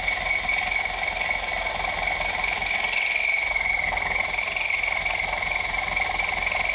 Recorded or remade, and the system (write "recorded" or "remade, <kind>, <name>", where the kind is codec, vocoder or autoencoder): recorded